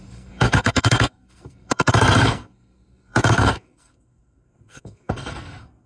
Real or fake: fake